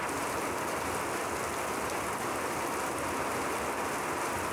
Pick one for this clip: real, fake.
real